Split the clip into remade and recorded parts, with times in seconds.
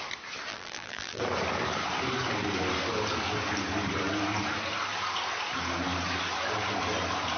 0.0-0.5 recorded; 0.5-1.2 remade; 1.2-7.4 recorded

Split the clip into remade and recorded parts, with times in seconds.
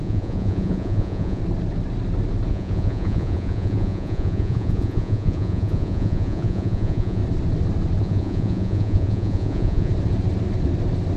0.0-1.4 remade; 1.4-2.5 recorded; 2.5-7.2 remade; 7.2-8.0 recorded; 8.0-9.9 remade; 9.9-11.2 recorded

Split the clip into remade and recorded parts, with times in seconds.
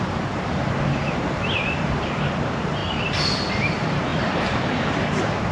0.0-2.8 remade; 2.8-3.5 recorded; 3.5-5.5 remade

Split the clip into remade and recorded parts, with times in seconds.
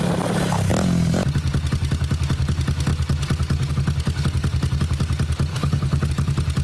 0.0-5.5 recorded; 5.5-6.1 remade; 6.1-6.6 recorded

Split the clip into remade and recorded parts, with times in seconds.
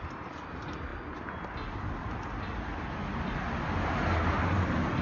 0.0-5.0 recorded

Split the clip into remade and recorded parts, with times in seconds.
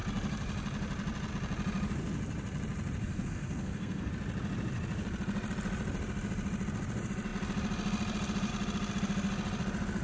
0.0-3.0 recorded; 3.0-4.1 remade; 4.1-10.0 recorded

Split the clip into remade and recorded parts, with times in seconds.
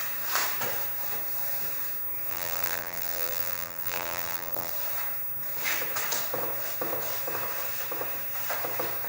0.0-2.3 recorded; 2.3-4.7 remade; 4.7-9.1 recorded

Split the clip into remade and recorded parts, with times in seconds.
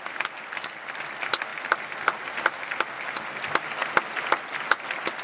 0.0-5.2 recorded